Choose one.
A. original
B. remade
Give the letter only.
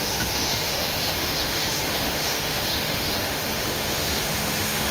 B